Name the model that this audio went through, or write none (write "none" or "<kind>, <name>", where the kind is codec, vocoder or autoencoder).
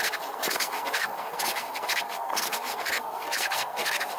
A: codec, SNAC